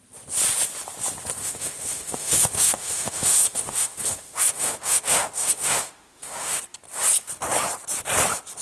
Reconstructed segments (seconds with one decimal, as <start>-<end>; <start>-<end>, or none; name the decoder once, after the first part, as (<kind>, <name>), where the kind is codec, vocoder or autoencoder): 1.4-6.6 (autoencoder, DAC-VAE)